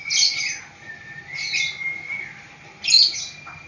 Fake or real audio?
real